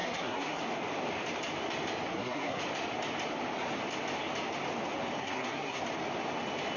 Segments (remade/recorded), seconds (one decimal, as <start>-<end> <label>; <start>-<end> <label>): 0.0-0.6 remade; 0.6-2.1 recorded; 2.1-2.6 remade; 2.6-5.2 recorded; 5.2-5.8 remade; 5.8-6.8 recorded